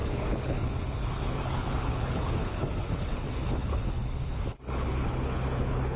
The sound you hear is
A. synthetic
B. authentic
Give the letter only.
A